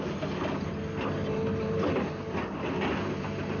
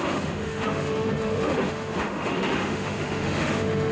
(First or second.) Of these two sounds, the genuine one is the first